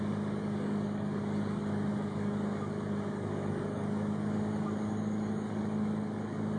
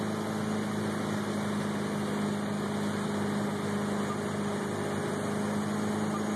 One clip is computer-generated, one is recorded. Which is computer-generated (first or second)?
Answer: first